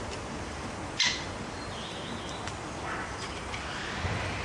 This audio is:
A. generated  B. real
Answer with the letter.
B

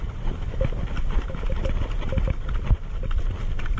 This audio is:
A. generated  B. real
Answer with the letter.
B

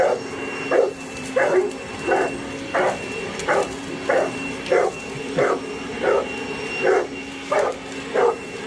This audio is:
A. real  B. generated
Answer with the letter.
B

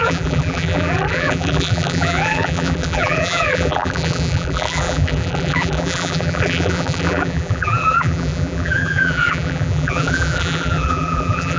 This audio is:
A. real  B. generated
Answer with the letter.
B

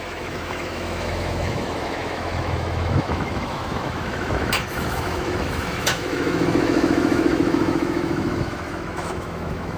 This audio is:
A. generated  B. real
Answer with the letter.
A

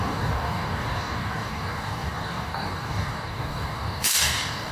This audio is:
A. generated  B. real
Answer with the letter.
A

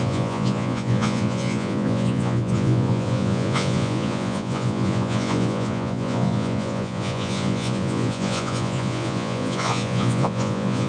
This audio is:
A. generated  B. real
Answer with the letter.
A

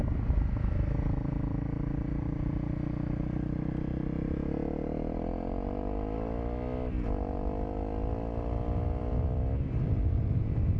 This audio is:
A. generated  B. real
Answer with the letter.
B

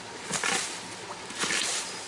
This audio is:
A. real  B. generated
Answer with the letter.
A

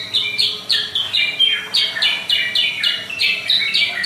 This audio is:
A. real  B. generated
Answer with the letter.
A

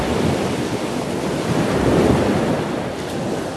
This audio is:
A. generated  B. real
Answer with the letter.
B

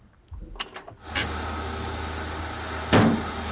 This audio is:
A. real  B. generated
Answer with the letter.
A